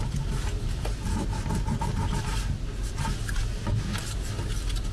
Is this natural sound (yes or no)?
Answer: yes